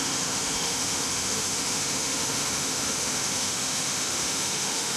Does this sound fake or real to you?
fake